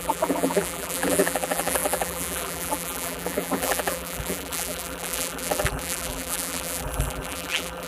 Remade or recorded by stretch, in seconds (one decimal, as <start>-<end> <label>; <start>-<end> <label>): 0.0-7.9 remade